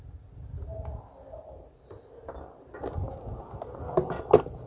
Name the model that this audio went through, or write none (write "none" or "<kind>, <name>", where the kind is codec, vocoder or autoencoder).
none